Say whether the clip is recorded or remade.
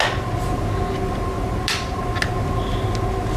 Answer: recorded